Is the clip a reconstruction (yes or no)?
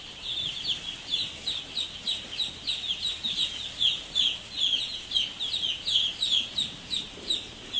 no